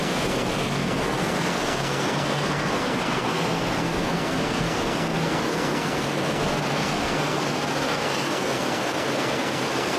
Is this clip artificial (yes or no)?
yes